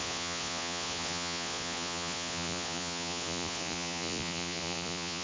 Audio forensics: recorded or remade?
remade